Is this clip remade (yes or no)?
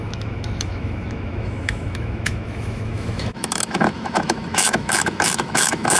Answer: yes